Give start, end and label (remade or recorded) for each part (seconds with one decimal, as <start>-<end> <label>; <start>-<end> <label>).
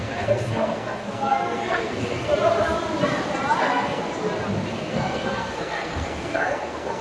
0.0-2.3 remade; 2.3-3.6 recorded; 3.6-4.0 remade; 4.0-4.7 recorded; 4.7-7.0 remade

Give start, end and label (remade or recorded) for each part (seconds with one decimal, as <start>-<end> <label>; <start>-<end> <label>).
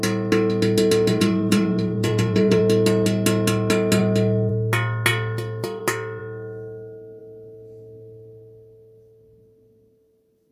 0.0-1.1 recorded; 1.1-2.6 remade; 2.6-10.5 recorded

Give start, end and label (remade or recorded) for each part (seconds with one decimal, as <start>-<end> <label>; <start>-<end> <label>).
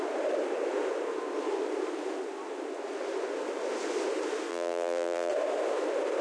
0.0-4.5 recorded; 4.5-5.3 remade; 5.3-6.2 recorded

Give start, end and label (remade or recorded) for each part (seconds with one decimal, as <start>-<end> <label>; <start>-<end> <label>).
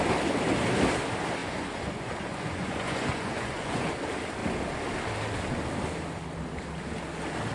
0.0-1.4 recorded; 1.4-3.9 remade; 3.9-7.5 recorded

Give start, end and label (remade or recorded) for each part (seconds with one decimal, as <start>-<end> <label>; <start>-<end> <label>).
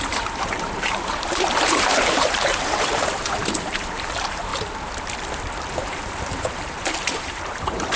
0.0-4.5 remade; 4.5-5.8 recorded; 5.8-8.0 remade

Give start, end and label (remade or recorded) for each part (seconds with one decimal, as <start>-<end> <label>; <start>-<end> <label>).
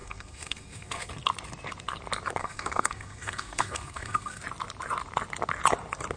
0.0-1.1 remade; 1.1-2.4 recorded; 2.4-4.4 remade; 4.4-6.2 recorded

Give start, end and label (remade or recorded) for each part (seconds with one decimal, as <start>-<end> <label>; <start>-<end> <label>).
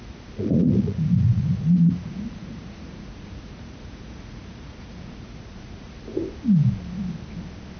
0.0-6.2 remade; 6.2-7.8 recorded